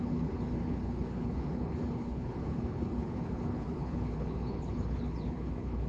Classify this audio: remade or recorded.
remade